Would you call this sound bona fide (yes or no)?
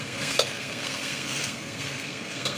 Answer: no